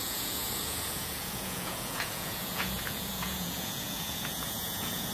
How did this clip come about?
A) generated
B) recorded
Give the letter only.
A